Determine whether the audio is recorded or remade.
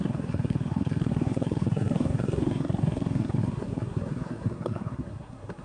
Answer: remade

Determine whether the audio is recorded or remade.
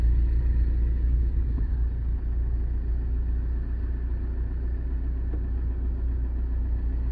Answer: recorded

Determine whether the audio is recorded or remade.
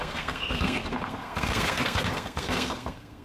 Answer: remade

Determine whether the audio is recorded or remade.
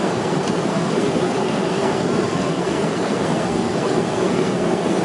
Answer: remade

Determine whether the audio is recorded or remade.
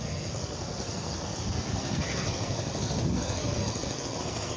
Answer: remade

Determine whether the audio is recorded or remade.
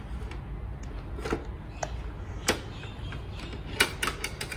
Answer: recorded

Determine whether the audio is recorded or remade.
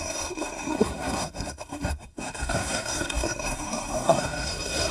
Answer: remade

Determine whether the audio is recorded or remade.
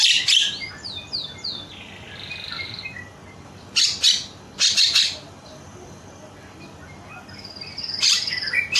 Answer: recorded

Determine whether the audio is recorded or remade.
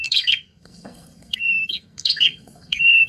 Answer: remade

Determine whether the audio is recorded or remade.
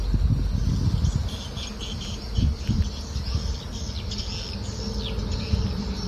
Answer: recorded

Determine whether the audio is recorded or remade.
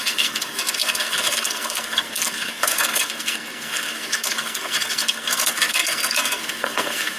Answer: remade